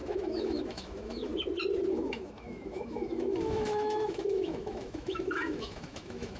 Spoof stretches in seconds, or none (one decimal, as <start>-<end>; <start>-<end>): 0.0-1.3; 1.9-6.4